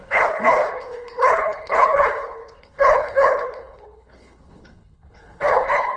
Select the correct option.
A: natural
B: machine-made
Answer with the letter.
B